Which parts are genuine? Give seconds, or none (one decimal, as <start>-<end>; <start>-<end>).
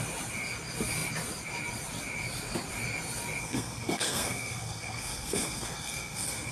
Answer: 0.0-3.4